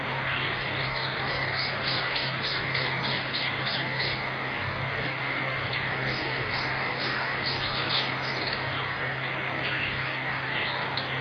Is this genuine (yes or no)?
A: no